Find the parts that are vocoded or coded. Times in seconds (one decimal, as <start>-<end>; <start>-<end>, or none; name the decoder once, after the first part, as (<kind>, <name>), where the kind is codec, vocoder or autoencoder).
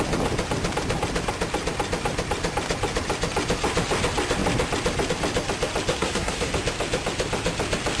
5.9-6.5 (codec, SNAC)